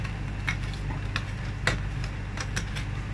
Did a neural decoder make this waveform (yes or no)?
no